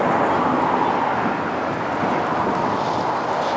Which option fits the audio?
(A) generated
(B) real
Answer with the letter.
B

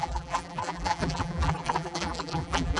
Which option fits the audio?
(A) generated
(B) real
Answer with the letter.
A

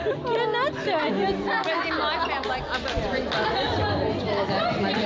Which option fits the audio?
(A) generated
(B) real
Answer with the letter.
B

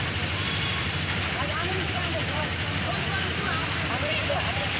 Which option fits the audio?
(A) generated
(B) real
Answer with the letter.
A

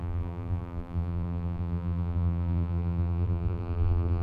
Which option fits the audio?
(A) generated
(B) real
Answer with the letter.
A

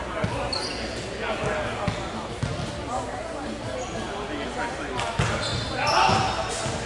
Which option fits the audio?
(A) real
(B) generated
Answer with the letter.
A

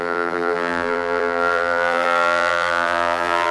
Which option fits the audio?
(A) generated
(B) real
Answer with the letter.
A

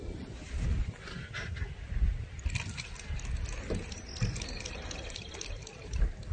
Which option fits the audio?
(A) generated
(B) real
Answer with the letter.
B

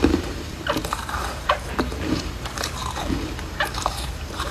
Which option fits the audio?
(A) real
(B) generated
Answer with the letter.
B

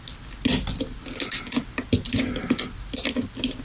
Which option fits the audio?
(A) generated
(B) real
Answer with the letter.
B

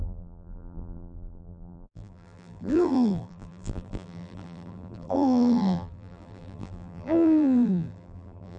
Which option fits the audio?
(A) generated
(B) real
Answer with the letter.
A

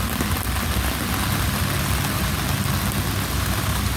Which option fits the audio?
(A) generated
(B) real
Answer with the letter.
B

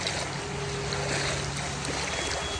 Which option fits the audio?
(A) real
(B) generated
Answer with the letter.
A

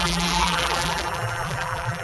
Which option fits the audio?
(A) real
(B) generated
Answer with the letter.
B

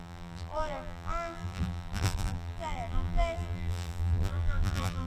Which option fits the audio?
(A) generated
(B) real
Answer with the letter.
A